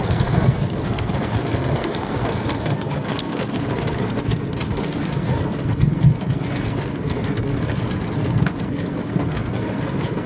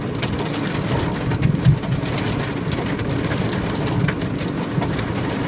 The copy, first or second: first